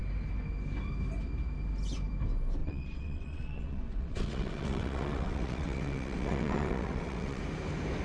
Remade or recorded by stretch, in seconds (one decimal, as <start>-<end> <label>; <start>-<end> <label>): 0.0-2.6 recorded; 2.6-7.4 remade; 7.4-8.0 recorded